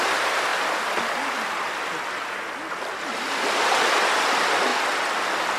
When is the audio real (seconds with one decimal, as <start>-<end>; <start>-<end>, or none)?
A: 0.0-5.6